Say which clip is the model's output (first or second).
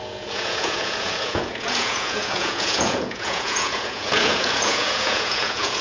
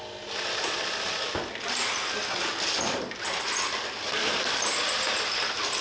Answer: first